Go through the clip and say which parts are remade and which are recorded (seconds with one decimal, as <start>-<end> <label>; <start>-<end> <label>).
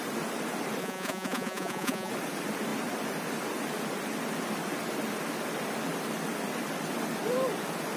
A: 0.0-0.8 recorded; 0.8-2.1 remade; 2.1-8.0 recorded